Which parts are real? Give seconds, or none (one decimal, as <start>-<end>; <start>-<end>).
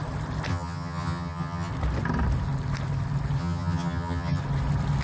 0.0-0.5; 1.7-3.4; 4.4-5.0